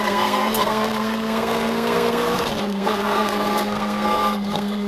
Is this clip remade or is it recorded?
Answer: remade